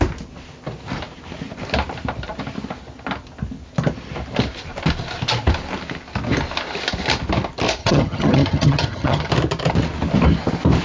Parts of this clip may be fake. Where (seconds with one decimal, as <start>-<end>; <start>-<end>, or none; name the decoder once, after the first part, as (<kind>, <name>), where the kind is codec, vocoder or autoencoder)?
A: 7.8-9.3 (vocoder, HiFi-GAN)